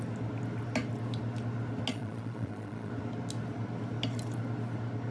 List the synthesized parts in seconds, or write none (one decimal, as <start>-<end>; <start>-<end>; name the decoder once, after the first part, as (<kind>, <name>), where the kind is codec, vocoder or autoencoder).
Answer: 1.9-2.9 (vocoder, Vocos)